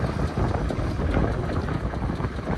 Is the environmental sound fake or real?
real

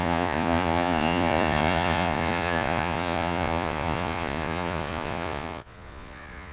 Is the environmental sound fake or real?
fake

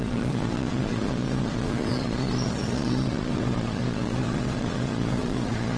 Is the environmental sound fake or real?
fake